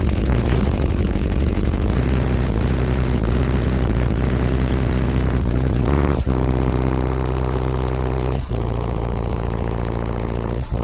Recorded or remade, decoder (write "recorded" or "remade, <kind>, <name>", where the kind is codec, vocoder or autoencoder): remade, vocoder, Vocos